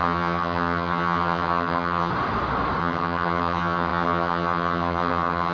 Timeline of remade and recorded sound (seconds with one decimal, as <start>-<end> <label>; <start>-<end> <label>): 0.0-2.1 remade; 2.1-2.8 recorded; 2.8-5.5 remade